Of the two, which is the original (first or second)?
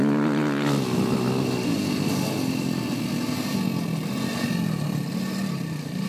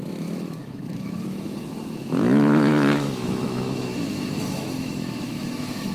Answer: first